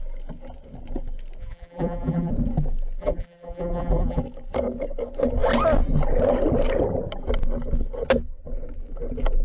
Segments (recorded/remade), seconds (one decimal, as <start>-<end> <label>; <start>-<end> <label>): 0.0-1.4 recorded; 1.4-2.3 remade; 2.3-3.0 recorded; 3.0-4.2 remade; 4.2-9.4 recorded